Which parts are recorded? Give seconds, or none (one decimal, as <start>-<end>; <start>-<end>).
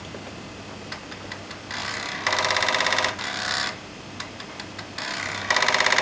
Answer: 0.0-1.8; 5.4-6.0